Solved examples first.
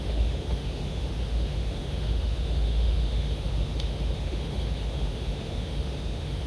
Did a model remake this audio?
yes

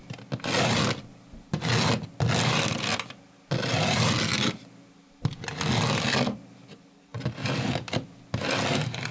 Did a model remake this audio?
no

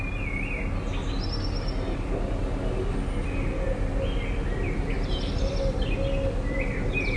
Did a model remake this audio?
no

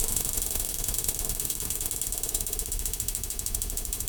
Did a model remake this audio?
yes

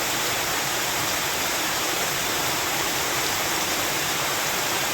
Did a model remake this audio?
yes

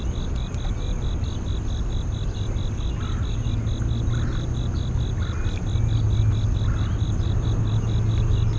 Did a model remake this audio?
no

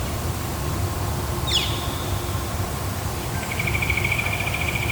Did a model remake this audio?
no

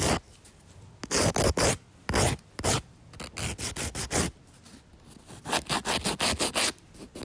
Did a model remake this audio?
no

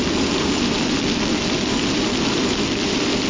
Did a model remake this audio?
no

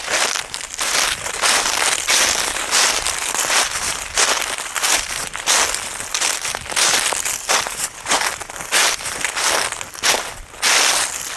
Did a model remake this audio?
no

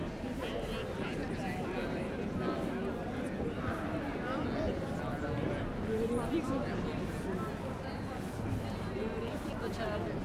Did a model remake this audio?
no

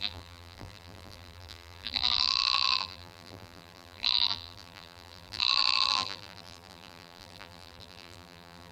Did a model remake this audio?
yes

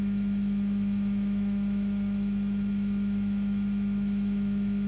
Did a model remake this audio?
yes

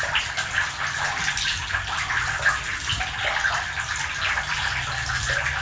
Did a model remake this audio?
no